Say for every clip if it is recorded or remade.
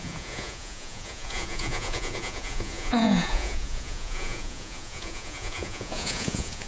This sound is remade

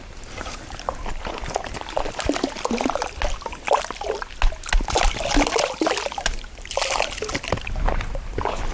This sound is recorded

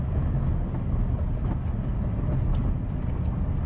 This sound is recorded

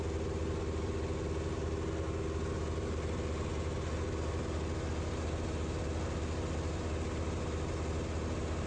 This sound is recorded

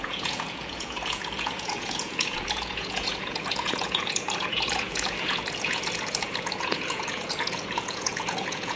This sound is remade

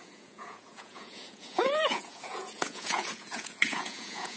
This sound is remade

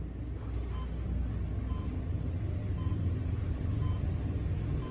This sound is recorded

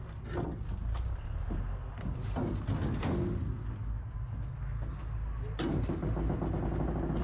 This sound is recorded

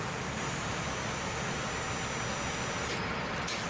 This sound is recorded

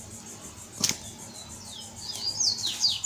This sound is recorded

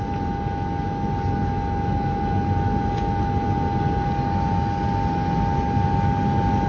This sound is recorded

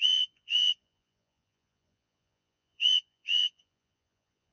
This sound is remade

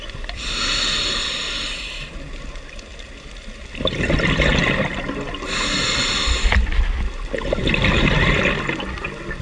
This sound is recorded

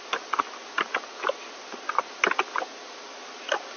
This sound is recorded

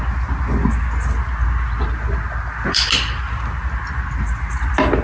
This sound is recorded